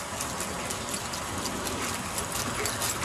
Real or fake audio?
real